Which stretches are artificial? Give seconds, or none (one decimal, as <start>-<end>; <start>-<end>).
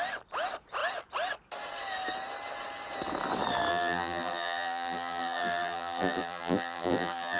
3.7-7.4